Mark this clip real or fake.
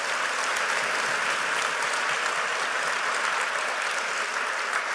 real